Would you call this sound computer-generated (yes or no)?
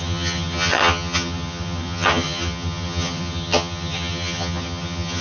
yes